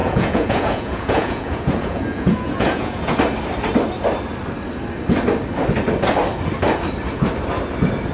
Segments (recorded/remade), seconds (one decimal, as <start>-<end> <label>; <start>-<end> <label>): 0.0-3.2 remade; 3.2-8.1 recorded